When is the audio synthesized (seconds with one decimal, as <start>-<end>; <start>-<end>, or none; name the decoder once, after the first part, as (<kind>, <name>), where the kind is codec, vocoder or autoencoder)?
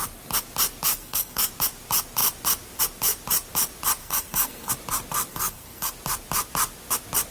0.9-1.5 (codec, SNAC); 4.0-4.7; 5.3-5.9